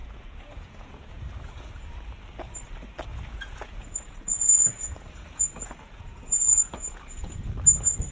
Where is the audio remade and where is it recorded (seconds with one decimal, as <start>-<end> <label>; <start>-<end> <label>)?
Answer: 0.0-1.7 remade; 1.7-3.1 recorded; 3.1-7.5 remade; 7.5-8.1 recorded